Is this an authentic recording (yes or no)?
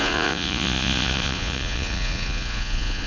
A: no